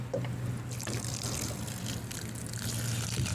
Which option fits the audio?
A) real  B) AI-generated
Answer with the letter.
A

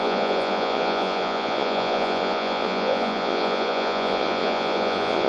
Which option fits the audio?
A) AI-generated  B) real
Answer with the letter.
A